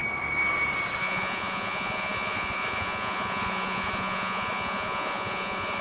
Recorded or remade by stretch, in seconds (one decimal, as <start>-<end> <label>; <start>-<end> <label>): 0.0-1.0 recorded; 1.0-5.8 remade